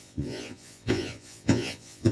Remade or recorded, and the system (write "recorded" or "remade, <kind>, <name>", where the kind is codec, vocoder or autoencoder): remade, vocoder, Vocos